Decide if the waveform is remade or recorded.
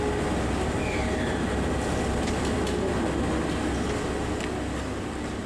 recorded